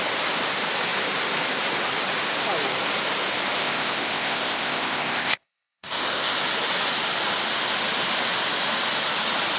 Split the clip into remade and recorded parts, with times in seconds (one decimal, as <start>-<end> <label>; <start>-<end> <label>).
0.0-3.6 recorded; 3.6-6.3 remade; 6.3-9.6 recorded